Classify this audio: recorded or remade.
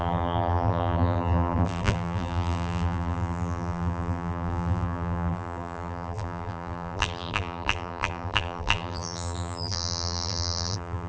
remade